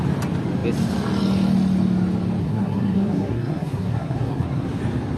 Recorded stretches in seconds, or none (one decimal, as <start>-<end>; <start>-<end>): 0.0-2.4; 4.8-5.2